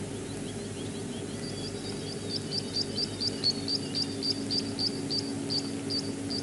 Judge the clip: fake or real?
real